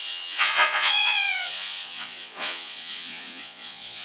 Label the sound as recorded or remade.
remade